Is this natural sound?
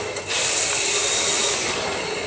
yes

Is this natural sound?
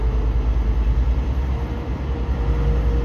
yes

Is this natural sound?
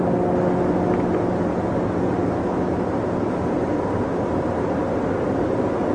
yes